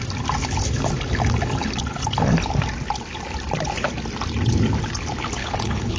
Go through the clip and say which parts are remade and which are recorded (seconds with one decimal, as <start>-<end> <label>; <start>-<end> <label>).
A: 0.0-5.4 recorded; 5.4-6.0 remade